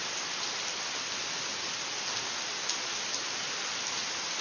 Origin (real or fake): real